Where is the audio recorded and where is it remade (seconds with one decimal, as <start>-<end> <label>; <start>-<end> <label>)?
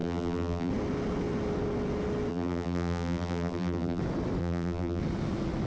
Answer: 0.0-0.7 remade; 0.7-2.3 recorded; 2.3-4.0 remade; 4.0-4.4 recorded; 4.4-5.0 remade; 5.0-5.7 recorded